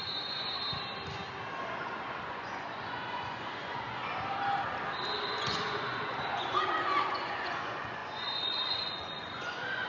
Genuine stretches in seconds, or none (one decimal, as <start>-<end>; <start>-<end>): 0.6-1.6; 4.0-5.3